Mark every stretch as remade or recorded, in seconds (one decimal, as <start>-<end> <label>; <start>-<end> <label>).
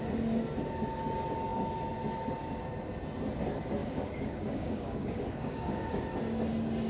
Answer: 0.0-3.8 recorded; 3.8-6.0 remade; 6.0-6.9 recorded